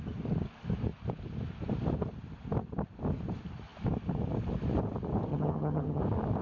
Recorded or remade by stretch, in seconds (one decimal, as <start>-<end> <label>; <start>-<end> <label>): 0.0-5.3 recorded; 5.3-6.0 remade; 6.0-6.4 recorded